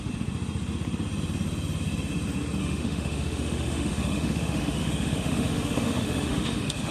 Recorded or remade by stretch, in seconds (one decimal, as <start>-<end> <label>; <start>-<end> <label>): 0.0-2.6 recorded; 2.6-6.9 remade

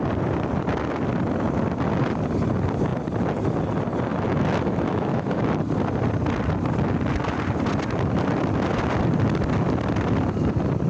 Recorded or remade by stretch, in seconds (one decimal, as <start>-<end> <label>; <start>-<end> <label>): 0.0-4.1 recorded; 4.1-5.4 remade; 5.4-10.9 recorded

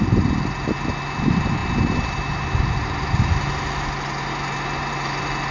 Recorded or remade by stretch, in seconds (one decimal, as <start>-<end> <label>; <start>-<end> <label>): 0.0-5.5 recorded

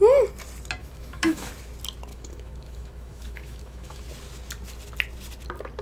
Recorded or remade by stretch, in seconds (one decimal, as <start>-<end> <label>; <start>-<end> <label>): 0.0-0.8 recorded; 0.8-1.5 remade; 1.5-2.1 recorded; 2.1-4.0 remade; 4.0-5.8 recorded

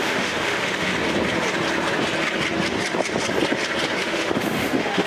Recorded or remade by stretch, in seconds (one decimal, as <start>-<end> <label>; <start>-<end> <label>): 0.0-0.9 remade; 0.9-4.0 recorded; 4.0-5.1 remade